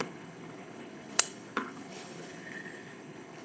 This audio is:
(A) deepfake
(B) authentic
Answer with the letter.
A